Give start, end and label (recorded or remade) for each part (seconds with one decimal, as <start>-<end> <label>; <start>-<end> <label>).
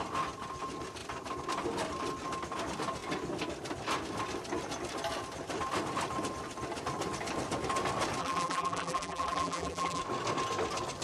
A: 0.0-8.2 recorded; 8.2-10.0 remade; 10.0-11.0 recorded